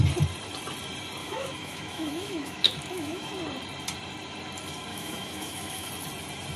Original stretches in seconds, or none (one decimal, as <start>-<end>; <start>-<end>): 0.0-1.2; 3.4-4.9; 5.9-6.6